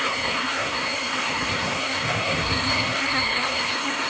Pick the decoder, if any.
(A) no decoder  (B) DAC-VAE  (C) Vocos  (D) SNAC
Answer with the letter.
D